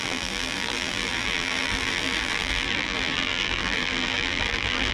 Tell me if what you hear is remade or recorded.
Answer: remade